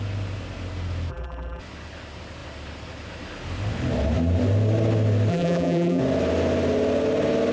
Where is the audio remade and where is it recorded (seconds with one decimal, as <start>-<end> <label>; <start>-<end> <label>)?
0.0-1.1 recorded; 1.1-1.6 remade; 1.6-5.3 recorded; 5.3-6.0 remade; 6.0-7.5 recorded